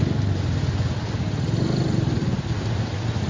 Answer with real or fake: real